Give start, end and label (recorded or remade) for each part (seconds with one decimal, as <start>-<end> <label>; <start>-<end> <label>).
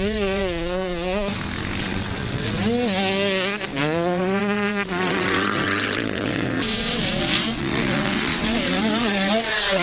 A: 0.0-0.4 remade; 0.4-1.8 recorded; 1.8-2.6 remade; 2.6-3.8 recorded; 3.8-9.8 remade